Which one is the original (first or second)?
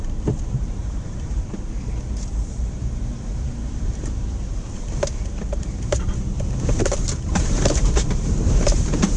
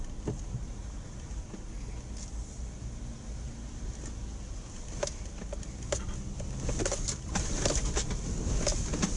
second